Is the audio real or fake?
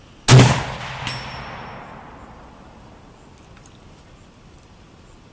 real